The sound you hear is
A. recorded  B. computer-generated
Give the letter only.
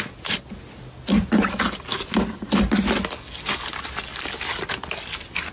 A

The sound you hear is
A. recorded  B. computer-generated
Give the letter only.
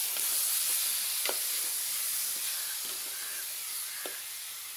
A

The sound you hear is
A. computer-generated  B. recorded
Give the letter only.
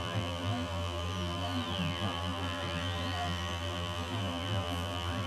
A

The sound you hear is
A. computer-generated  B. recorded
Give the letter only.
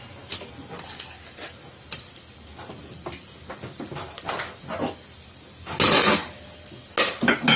B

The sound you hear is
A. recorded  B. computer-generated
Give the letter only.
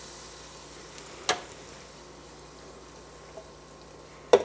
A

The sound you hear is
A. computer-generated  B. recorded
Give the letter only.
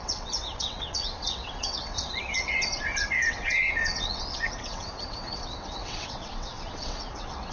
A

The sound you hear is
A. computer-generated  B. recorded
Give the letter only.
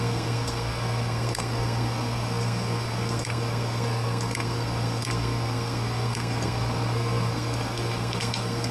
A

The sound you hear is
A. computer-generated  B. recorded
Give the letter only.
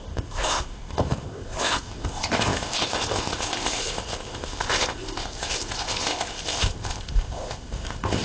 A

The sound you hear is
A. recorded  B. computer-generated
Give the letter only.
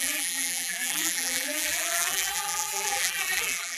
B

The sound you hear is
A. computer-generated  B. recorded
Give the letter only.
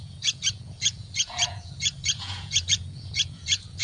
A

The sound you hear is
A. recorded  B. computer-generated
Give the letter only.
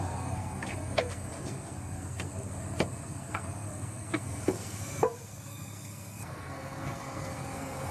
B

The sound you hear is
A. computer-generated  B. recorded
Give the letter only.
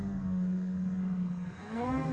A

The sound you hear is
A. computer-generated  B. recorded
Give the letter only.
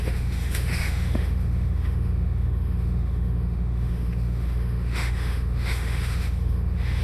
A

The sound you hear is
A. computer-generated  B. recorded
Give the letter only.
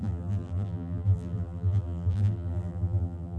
A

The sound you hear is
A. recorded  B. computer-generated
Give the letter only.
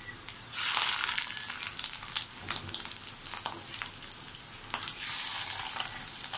A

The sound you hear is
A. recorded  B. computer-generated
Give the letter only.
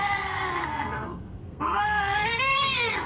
B